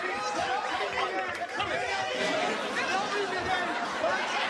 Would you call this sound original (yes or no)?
yes